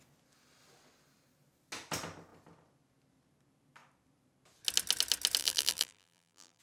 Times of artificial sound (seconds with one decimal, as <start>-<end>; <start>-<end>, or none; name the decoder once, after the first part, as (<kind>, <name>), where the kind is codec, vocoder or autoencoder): 5.4-6.6 (vocoder, BigVGAN v2)